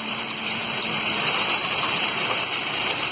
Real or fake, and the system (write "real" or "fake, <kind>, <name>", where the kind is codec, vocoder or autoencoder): fake, vocoder, BigVGAN v2